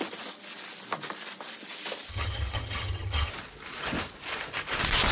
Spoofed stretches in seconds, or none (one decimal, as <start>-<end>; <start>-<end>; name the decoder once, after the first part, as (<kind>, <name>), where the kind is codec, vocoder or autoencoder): 2.1-3.3 (vocoder, HiFi-GAN)